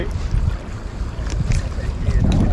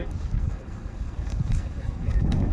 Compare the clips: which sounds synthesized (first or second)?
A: second